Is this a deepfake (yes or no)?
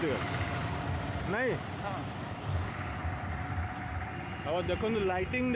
no